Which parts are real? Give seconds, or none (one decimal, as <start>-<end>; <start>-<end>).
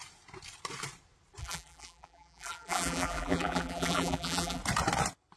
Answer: 0.0-1.4; 4.6-5.4